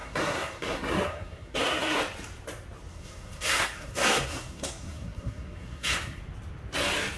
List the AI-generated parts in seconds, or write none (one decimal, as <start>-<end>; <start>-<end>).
0.0-2.0; 2.9-6.2